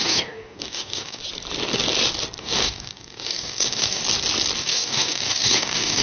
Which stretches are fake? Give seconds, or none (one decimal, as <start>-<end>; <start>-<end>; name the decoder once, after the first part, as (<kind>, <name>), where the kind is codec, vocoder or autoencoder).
0.0-1.2 (codec, DAC); 2.4-4.0; 4.6-6.0